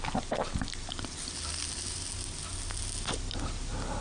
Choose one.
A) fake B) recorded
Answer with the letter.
B